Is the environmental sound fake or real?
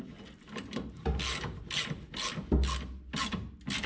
real